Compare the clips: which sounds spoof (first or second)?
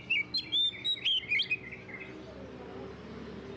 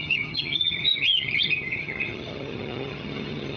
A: second